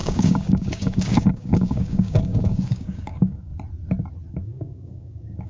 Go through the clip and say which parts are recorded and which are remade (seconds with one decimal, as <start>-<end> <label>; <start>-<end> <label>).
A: 0.0-3.5 remade; 3.5-4.3 recorded; 4.3-5.5 remade